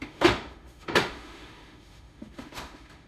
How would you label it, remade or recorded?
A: remade